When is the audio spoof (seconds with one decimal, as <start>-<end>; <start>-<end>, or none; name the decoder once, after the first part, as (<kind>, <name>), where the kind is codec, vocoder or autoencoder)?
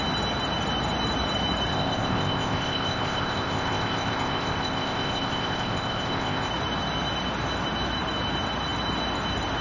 1.7-6.5 (codec, ZipCodec)